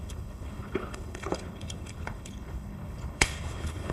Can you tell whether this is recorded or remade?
remade